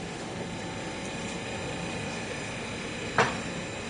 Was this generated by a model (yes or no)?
no